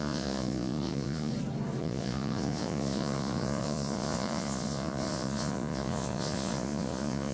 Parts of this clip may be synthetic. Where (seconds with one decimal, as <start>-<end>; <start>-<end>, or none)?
0.0-1.3; 1.8-7.3